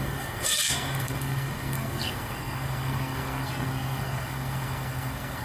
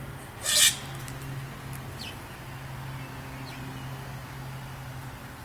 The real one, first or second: second